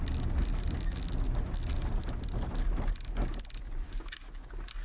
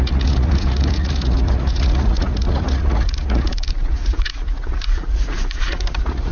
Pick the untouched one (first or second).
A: first